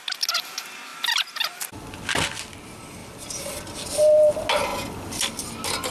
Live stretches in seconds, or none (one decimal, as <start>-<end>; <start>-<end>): 0.0-5.9